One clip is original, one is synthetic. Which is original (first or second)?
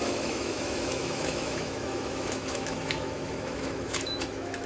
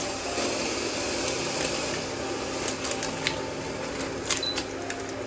second